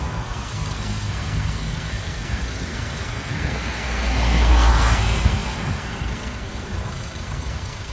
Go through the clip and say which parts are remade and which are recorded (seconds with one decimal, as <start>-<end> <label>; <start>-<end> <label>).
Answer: 0.0-7.9 remade